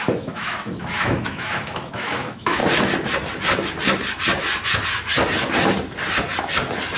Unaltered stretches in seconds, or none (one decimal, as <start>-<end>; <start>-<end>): 2.6-7.0